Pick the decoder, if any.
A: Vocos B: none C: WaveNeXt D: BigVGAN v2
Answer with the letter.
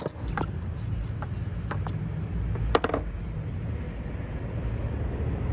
B